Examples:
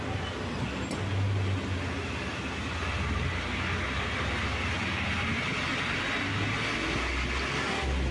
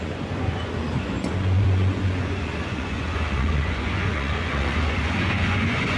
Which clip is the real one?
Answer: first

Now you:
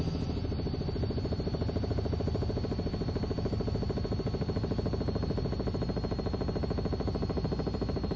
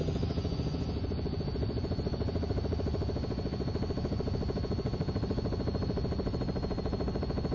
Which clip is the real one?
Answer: first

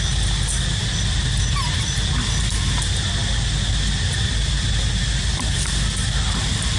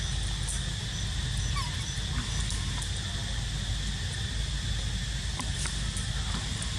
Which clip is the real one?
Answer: second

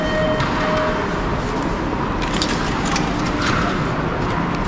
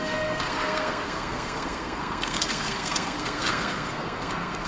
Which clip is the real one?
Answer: first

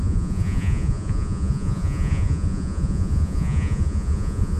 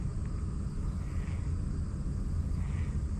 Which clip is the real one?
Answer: second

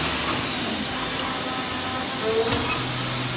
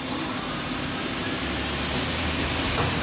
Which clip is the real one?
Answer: first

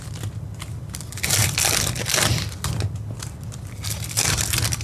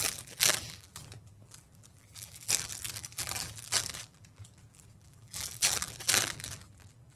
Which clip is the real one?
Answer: first